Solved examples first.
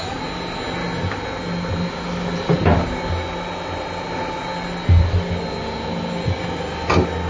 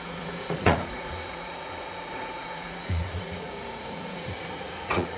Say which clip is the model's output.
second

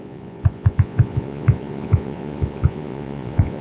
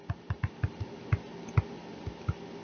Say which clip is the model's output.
first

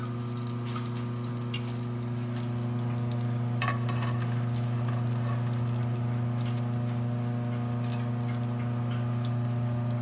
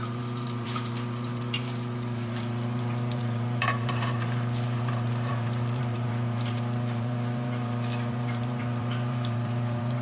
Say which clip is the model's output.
second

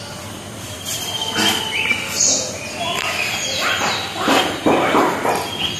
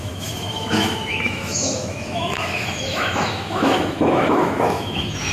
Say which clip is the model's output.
second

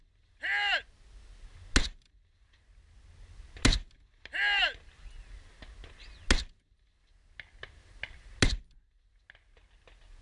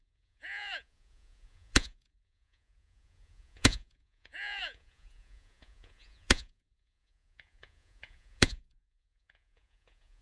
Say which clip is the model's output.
second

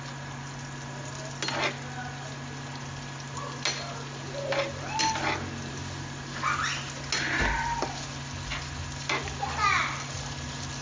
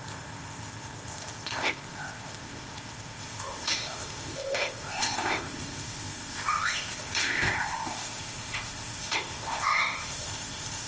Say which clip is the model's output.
second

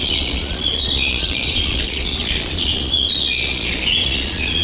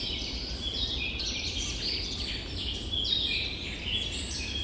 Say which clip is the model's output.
first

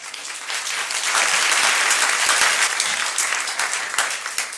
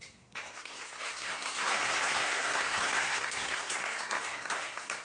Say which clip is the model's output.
second